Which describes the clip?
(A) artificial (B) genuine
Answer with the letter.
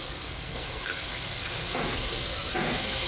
A